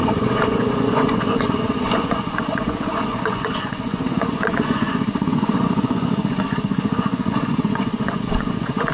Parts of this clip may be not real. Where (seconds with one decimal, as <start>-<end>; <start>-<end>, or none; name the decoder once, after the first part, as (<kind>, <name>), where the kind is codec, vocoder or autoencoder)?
0.0-8.9 (vocoder, Vocos)